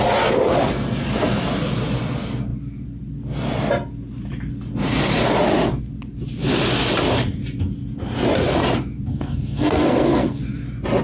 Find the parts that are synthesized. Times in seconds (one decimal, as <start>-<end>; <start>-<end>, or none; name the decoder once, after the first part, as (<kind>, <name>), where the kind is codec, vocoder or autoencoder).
9.1-10.4 (codec, SNAC)